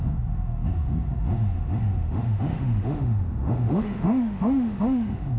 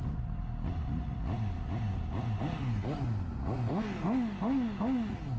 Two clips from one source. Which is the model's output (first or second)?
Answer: first